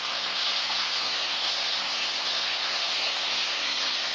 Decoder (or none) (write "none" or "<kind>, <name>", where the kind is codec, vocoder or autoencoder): codec, SNAC